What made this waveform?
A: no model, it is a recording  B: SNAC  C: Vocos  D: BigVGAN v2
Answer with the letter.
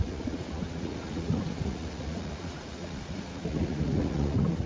C